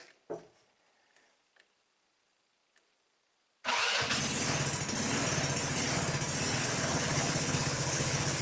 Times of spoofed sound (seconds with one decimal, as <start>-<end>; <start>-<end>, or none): 6.5-8.4

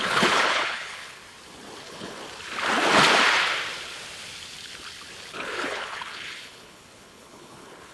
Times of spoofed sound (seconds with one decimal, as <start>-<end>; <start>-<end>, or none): 0.0-1.2; 1.8-2.2; 5.3-7.9